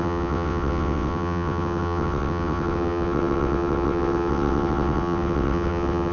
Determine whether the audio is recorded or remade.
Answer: remade